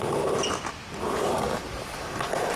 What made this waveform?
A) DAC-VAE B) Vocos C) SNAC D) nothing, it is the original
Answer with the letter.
D